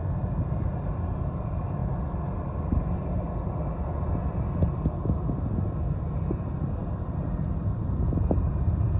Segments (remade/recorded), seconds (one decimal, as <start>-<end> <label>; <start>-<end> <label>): 0.0-9.0 recorded